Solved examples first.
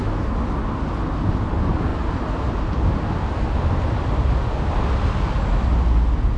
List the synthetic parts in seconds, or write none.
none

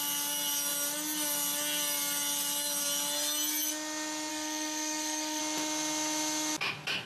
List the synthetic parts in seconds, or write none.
4.3-5.4 (codec, SNAC)